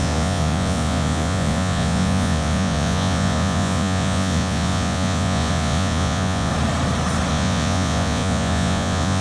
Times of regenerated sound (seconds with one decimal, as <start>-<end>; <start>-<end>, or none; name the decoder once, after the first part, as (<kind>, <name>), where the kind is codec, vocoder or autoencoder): 0.0-6.5 (vocoder, Vocos); 7.3-9.2